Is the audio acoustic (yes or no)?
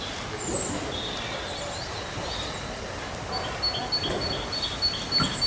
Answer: yes